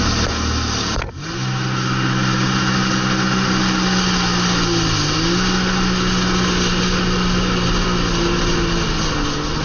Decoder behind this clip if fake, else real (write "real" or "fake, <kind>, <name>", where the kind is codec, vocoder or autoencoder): real